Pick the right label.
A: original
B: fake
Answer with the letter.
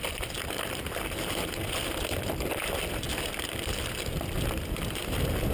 B